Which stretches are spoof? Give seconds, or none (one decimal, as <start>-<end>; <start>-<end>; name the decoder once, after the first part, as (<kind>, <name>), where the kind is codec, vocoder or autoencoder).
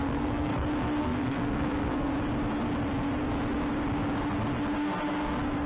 0.0-0.5 (codec, SNAC); 1.0-2.1